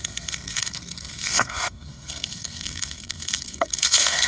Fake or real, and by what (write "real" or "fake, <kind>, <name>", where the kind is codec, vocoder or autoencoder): fake, codec, SNAC